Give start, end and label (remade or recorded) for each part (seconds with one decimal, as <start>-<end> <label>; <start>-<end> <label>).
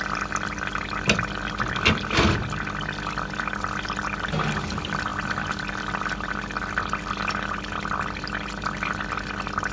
0.0-9.7 recorded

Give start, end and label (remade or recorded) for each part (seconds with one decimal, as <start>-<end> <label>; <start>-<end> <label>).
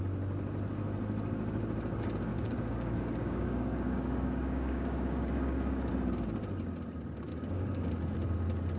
0.0-2.3 recorded; 2.3-5.9 remade; 5.9-7.3 recorded; 7.3-7.9 remade; 7.9-8.8 recorded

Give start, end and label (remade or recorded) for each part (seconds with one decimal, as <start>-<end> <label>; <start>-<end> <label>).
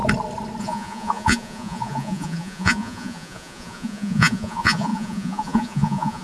0.0-0.6 recorded; 0.6-6.2 remade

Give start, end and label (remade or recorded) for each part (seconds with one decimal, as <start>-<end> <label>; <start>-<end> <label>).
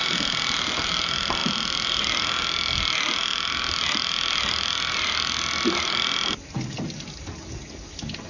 0.0-8.3 recorded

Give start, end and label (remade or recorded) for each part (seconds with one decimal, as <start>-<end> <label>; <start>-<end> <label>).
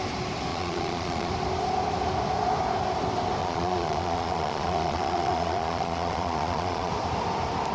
0.0-0.5 recorded; 0.5-1.3 remade; 1.3-3.4 recorded; 3.4-6.9 remade; 6.9-7.7 recorded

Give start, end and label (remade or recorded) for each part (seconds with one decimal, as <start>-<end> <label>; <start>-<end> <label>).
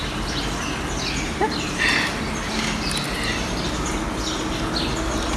0.0-5.4 recorded